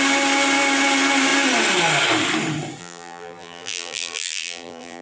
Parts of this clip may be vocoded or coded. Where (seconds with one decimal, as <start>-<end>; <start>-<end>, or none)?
2.8-5.0